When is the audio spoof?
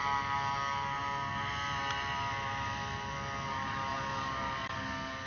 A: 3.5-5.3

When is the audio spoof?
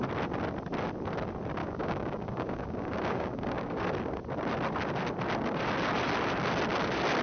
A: 1.6-3.8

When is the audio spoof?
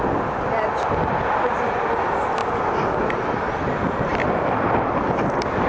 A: none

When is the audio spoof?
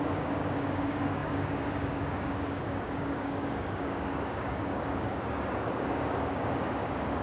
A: 0.0-7.2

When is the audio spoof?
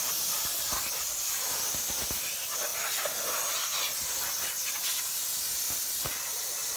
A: none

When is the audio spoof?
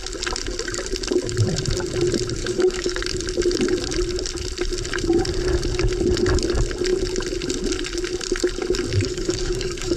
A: 2.4-3.0; 8.9-10.0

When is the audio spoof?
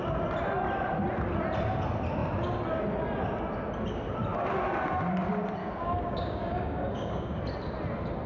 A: 5.6-7.4